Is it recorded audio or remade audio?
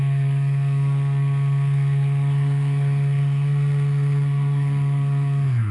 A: remade